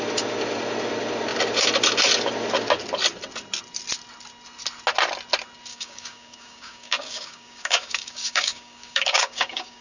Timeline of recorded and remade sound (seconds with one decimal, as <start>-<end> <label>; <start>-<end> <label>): 0.0-5.7 recorded; 5.7-9.8 remade

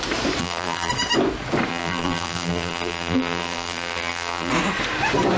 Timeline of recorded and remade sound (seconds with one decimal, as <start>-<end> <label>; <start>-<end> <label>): 0.0-0.4 recorded; 0.4-0.9 remade; 0.9-1.7 recorded; 1.7-4.5 remade; 4.5-5.4 recorded

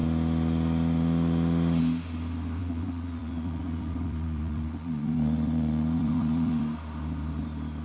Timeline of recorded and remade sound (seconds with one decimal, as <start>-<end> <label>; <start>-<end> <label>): 0.0-2.6 recorded; 2.6-6.6 remade; 6.6-7.8 recorded

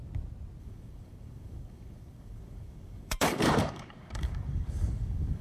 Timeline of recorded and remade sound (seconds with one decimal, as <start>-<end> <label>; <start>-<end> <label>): 0.0-0.6 recorded; 0.6-5.4 remade

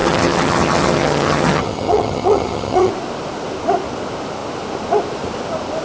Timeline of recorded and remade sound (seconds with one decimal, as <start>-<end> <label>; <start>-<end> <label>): 0.0-2.9 remade; 2.9-5.8 recorded

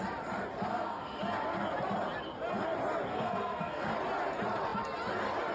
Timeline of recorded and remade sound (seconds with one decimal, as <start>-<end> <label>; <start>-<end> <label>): 0.0-0.7 recorded; 0.7-1.2 remade; 1.2-3.1 recorded; 3.1-3.9 remade; 3.9-5.5 recorded